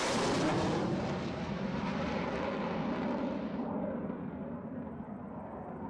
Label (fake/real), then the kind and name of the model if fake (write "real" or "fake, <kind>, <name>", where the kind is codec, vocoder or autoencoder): real